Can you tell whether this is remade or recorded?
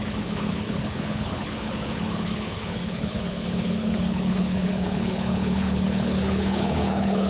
remade